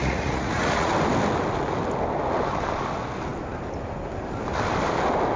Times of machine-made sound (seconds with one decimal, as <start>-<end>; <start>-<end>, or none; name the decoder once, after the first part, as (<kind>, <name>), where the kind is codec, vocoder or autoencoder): 0.0-0.9 (vocoder, Vocos)